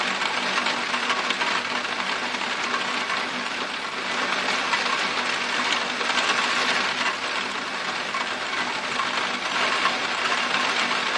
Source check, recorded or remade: recorded